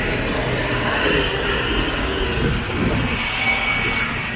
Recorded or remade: recorded